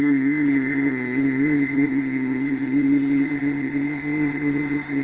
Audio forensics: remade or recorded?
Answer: remade